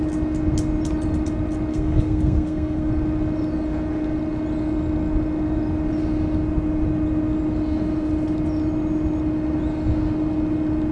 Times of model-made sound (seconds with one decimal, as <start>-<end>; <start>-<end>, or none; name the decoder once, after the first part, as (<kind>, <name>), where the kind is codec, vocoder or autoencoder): 1.7-2.9 (codec, SNAC)